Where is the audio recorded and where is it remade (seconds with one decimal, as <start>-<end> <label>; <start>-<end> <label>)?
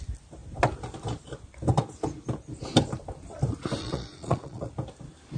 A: 0.0-3.8 recorded; 3.8-4.7 remade; 4.7-5.4 recorded